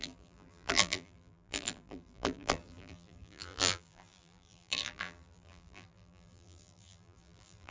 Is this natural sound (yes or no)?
no